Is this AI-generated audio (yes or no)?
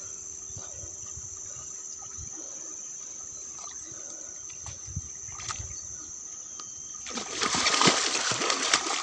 no